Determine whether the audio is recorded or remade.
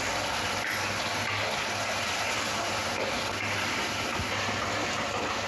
recorded